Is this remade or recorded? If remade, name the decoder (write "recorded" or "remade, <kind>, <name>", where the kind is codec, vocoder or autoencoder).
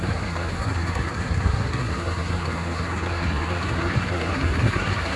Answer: remade, codec, SNAC